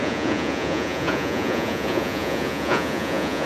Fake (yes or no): yes